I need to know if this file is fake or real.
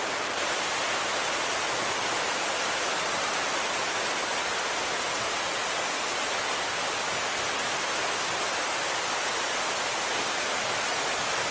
real